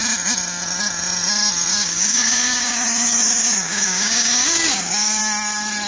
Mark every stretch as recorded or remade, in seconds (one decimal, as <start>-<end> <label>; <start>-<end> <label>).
0.0-1.7 recorded; 1.7-5.2 remade; 5.2-5.9 recorded